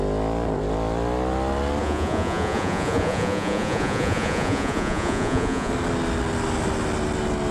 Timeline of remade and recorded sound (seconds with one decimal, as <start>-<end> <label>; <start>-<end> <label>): 0.0-1.8 recorded; 1.8-5.7 remade; 5.7-7.5 recorded